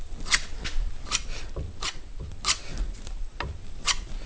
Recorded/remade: recorded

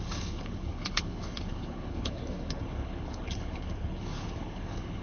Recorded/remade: remade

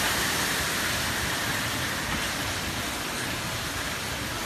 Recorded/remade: recorded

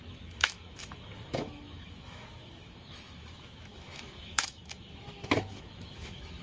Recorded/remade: remade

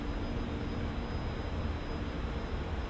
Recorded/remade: recorded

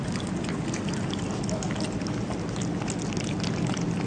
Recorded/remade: recorded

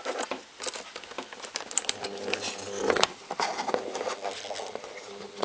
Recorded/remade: recorded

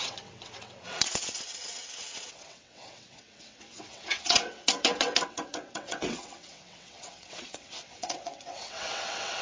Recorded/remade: remade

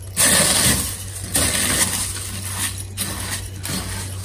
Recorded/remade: recorded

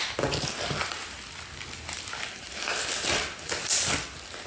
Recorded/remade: recorded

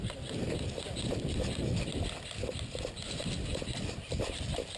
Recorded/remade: recorded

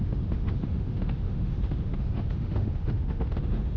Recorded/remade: remade